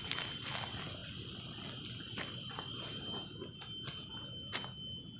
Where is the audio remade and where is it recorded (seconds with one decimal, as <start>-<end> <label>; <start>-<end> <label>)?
0.0-5.2 recorded

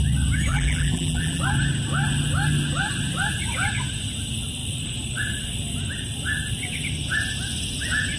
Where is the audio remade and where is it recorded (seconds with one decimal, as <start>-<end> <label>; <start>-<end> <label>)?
0.0-0.5 recorded; 0.5-1.4 remade; 1.4-8.2 recorded

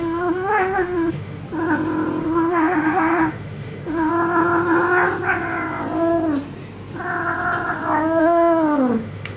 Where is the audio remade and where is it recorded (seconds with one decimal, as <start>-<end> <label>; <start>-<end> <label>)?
0.0-1.4 remade; 1.4-2.2 recorded; 2.2-4.1 remade; 4.1-8.2 recorded; 8.2-9.4 remade

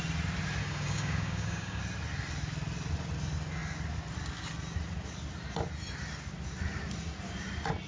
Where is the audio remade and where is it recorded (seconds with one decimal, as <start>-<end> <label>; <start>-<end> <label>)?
0.0-0.6 recorded; 0.6-1.8 remade; 1.8-7.9 recorded